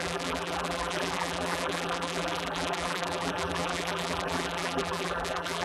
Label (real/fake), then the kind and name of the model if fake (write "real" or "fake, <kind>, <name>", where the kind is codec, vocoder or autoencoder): fake, vocoder, BigVGAN v2